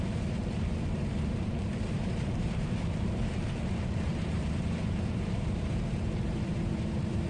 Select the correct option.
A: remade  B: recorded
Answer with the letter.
A